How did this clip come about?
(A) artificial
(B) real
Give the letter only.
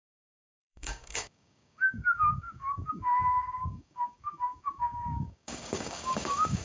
A